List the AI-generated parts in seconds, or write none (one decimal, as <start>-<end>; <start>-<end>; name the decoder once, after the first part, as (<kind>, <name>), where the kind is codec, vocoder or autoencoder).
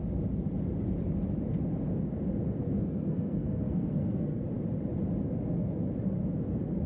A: 2.6-4.5 (codec, SNAC)